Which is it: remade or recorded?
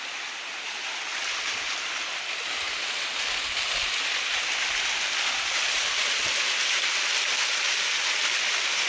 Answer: recorded